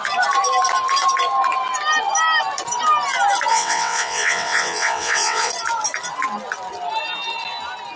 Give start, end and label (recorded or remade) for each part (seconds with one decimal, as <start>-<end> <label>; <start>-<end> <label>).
0.0-3.5 recorded; 3.5-5.5 remade; 5.5-8.0 recorded